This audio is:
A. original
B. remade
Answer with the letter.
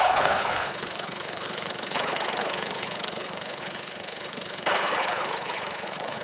B